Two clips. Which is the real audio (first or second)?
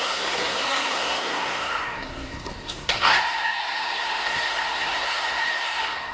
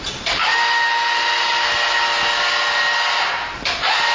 second